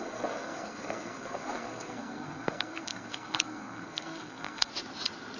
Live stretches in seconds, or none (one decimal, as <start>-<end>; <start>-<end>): 4.7-5.4